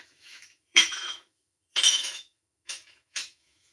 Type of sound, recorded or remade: remade